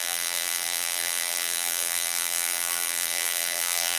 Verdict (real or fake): fake